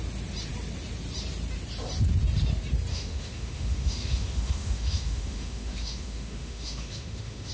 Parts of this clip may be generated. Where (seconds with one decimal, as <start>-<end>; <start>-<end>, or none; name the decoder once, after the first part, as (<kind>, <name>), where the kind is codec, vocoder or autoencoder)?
2.9-7.5 (autoencoder, DAC-VAE)